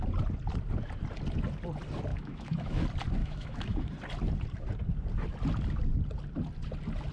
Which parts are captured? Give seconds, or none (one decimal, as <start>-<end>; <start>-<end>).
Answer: 0.0-2.1; 2.8-3.2; 3.9-7.1